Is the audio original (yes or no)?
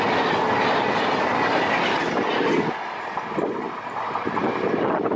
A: yes